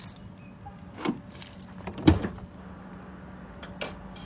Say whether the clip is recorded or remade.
recorded